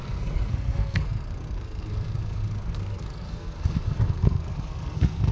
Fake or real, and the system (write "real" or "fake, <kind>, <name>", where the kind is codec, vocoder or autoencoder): fake, codec, SNAC